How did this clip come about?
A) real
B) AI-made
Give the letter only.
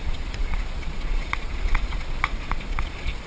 B